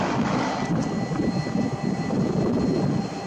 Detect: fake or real real